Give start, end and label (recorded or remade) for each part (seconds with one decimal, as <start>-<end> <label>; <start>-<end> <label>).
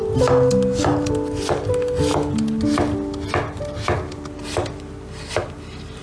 0.0-6.0 recorded